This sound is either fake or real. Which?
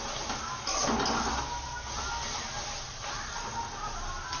real